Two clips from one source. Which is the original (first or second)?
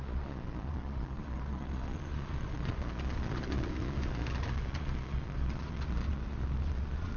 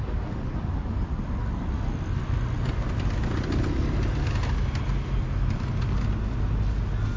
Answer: second